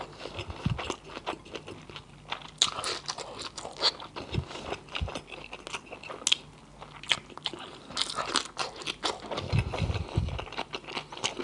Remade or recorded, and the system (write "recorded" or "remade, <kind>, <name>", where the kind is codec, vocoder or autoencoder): recorded